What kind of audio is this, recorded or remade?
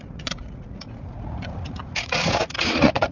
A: remade